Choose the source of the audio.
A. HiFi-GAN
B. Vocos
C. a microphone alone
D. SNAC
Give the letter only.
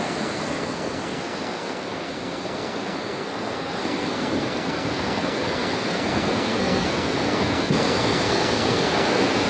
D